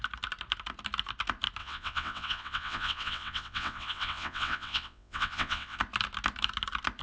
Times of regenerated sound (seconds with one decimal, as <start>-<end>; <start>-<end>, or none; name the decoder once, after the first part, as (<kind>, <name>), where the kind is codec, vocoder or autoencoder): 1.6-5.8 (vocoder, WaveNeXt)